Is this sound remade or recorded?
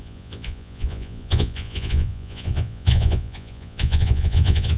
remade